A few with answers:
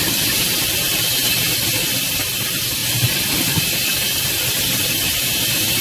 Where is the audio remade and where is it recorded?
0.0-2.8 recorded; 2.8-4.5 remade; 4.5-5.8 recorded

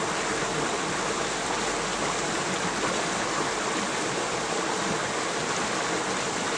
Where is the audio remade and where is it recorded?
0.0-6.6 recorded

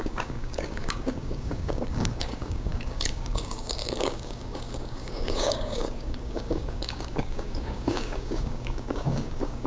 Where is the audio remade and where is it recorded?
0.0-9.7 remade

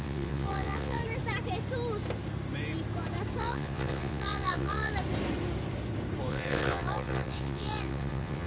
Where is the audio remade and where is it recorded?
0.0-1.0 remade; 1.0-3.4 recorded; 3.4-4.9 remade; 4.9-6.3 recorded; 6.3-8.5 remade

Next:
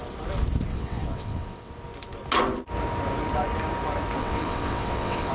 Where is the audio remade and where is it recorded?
0.0-0.7 recorded; 0.7-1.7 remade; 1.7-4.2 recorded; 4.2-5.3 remade